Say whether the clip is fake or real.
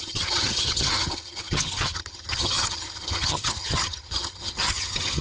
fake